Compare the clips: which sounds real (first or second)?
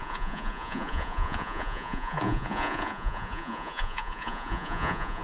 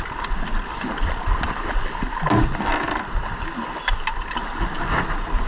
second